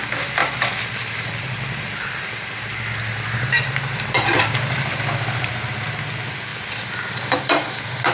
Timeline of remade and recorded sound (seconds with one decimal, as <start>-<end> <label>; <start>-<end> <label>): 0.0-8.1 remade